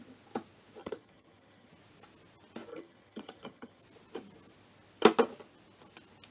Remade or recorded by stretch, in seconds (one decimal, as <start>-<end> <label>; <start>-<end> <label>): 0.0-0.8 recorded; 0.8-1.7 remade; 1.7-2.7 recorded; 2.7-3.8 remade; 3.8-6.3 recorded